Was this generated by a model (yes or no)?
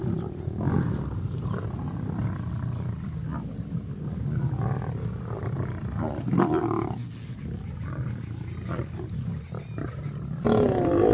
no